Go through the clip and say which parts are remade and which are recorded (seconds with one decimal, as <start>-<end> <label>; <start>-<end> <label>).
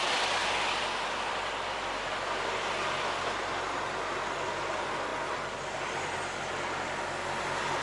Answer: 0.0-0.4 recorded; 0.4-4.0 remade; 4.0-7.8 recorded